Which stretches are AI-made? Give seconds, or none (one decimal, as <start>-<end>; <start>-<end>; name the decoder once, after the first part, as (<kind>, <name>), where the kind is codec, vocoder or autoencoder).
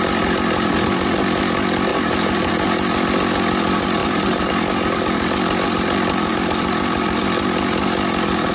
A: 1.9-2.5 (vocoder, BigVGAN v2); 4.0-4.5